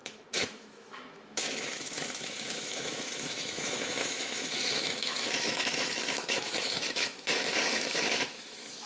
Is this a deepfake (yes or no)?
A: yes